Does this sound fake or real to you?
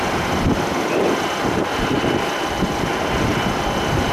real